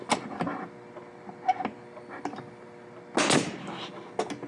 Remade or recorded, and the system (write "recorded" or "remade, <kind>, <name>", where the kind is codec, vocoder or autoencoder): recorded